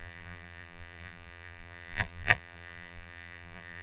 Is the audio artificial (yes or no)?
yes